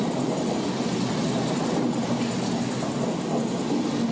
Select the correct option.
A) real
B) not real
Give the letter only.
A